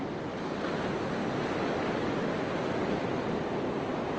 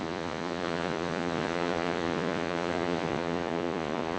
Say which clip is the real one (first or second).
first